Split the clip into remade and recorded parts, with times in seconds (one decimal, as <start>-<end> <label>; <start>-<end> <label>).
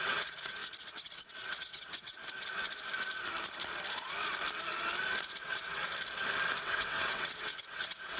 0.0-0.6 remade; 0.6-1.3 recorded; 1.3-2.2 remade; 2.2-5.4 recorded; 5.4-5.9 remade; 5.9-6.6 recorded; 6.6-8.2 remade